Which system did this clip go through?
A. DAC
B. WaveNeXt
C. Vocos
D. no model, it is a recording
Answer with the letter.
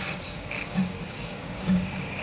A